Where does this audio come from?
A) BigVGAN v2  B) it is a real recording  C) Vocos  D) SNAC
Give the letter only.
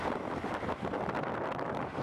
B